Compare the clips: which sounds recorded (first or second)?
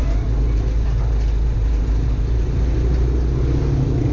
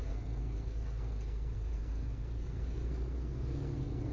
first